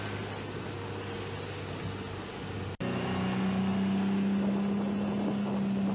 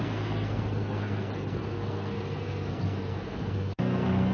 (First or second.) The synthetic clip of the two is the second